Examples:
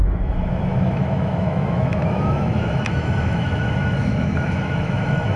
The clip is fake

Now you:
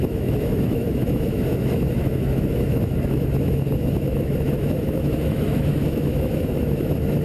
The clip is fake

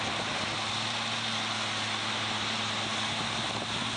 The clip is real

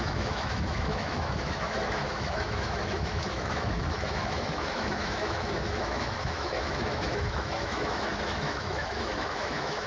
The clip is fake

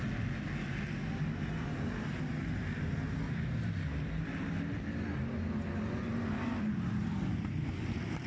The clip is real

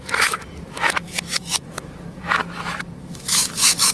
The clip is fake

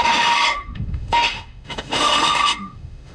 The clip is fake